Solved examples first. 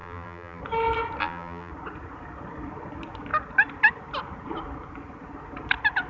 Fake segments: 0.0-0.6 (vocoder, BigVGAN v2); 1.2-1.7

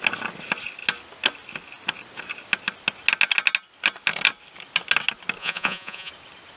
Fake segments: 5.4-6.1 (vocoder, Vocos)